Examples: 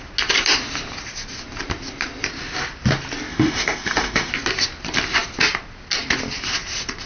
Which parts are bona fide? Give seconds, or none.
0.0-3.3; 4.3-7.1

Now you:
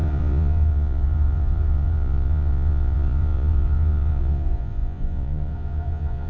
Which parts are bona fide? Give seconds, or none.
none